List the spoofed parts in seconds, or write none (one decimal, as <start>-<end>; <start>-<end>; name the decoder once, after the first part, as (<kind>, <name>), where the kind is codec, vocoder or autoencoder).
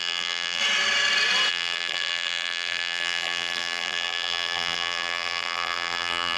0.0-0.6 (vocoder, BigVGAN v2); 1.5-6.4